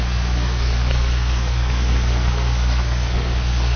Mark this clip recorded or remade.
remade